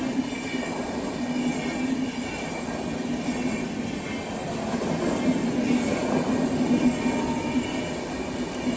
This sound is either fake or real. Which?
real